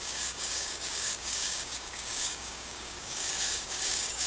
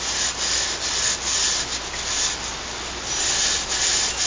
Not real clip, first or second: first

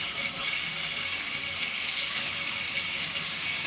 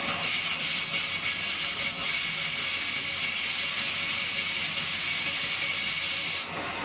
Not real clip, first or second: first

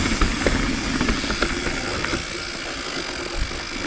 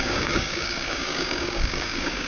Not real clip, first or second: second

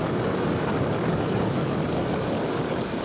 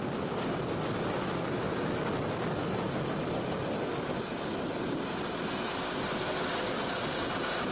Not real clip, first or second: first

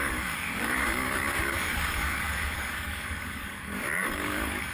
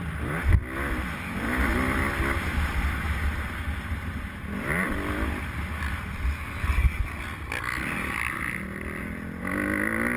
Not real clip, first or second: first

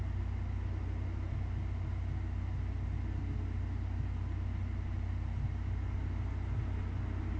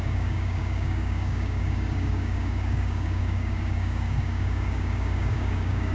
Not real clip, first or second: second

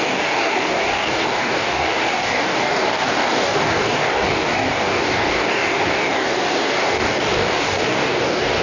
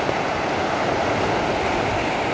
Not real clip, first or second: first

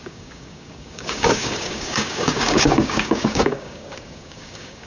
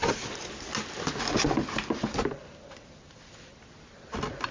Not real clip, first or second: first